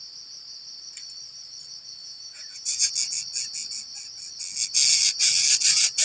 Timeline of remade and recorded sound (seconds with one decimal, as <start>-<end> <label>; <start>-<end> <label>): 0.0-2.0 recorded; 2.0-2.9 remade; 2.9-6.0 recorded

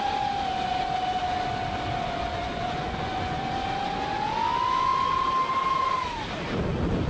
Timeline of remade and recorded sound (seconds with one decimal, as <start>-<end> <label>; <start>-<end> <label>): 0.0-2.3 recorded; 2.3-3.5 remade; 3.5-7.1 recorded

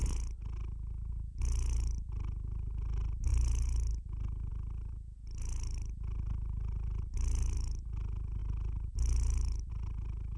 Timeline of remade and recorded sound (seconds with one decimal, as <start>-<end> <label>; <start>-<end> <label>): 0.0-10.4 recorded

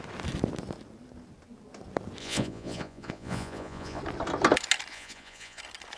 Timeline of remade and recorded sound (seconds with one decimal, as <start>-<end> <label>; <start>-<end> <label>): 0.0-2.2 recorded; 2.2-4.0 remade; 4.0-4.9 recorded; 4.9-5.6 remade; 5.6-6.0 recorded

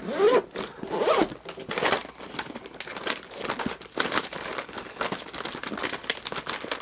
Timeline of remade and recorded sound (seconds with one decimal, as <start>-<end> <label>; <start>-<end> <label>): 0.0-6.8 recorded